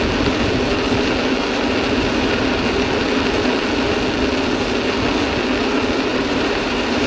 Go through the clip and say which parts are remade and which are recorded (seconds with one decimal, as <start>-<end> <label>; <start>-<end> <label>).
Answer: 0.0-6.1 recorded; 6.1-7.1 remade